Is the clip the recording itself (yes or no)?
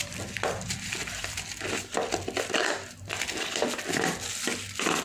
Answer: yes